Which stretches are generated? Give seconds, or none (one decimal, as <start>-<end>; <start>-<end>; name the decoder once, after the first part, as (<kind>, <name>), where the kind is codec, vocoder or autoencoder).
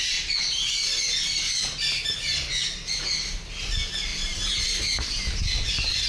none